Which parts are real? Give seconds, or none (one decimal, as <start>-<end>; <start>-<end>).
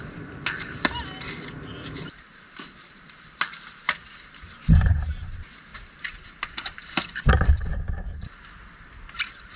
0.0-9.6